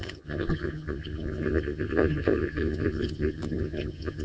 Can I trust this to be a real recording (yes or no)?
no